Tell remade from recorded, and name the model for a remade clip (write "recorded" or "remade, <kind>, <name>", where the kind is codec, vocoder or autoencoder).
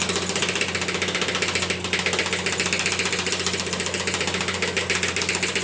recorded